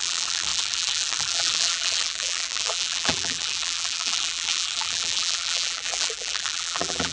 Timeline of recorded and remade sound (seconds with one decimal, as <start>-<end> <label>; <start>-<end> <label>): 0.0-7.1 remade